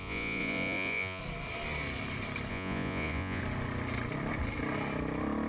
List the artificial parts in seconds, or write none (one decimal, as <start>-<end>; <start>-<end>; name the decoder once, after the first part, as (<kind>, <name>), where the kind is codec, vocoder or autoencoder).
0.0-1.2 (vocoder, Vocos); 2.5-3.4